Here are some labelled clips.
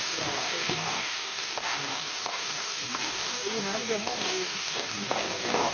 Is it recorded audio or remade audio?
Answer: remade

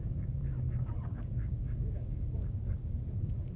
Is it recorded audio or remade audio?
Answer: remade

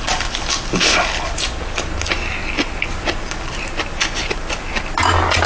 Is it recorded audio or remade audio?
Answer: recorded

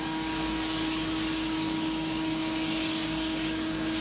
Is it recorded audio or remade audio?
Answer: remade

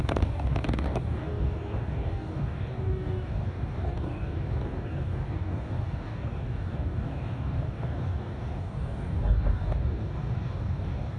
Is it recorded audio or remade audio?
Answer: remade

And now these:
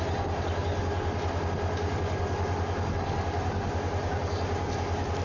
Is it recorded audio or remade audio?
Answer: recorded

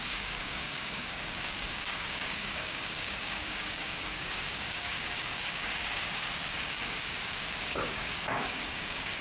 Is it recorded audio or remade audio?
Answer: remade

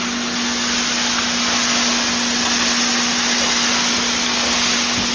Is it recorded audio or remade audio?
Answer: recorded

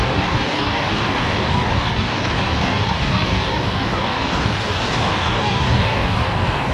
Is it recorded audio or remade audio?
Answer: remade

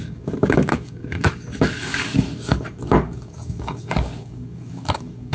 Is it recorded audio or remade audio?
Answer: remade